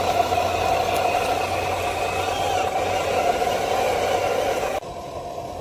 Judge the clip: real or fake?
real